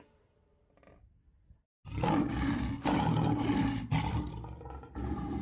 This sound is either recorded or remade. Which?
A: recorded